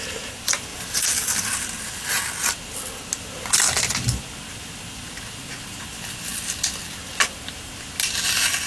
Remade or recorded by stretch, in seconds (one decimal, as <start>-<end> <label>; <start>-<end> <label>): 0.0-8.7 recorded